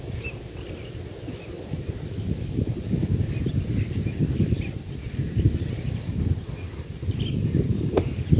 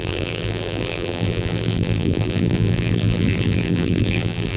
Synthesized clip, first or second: second